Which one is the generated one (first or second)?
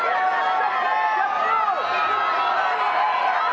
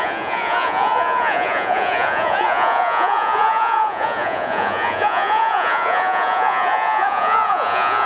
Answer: second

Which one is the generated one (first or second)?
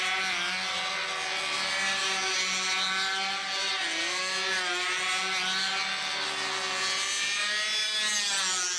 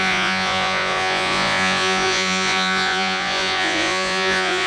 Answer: second